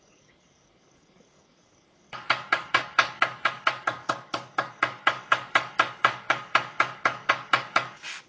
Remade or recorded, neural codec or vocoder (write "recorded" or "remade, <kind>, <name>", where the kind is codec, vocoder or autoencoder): remade, codec, DAC